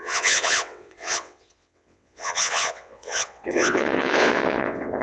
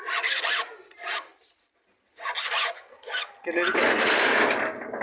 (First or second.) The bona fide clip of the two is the second